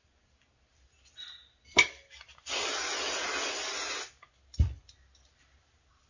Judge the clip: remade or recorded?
recorded